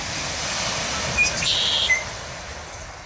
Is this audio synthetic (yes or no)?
no